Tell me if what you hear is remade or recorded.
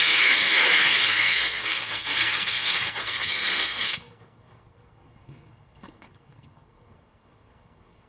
remade